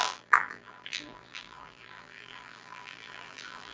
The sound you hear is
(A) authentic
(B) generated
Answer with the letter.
B